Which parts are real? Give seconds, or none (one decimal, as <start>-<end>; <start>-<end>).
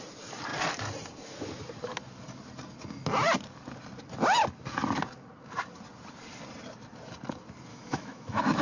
0.0-7.7